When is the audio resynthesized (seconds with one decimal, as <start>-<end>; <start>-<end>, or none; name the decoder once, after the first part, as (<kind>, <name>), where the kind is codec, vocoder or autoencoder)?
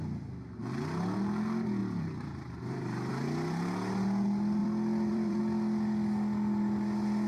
1.8-3.1 (vocoder, BigVGAN v2); 4.6-5.4